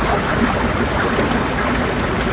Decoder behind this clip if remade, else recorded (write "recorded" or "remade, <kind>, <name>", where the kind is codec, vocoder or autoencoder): recorded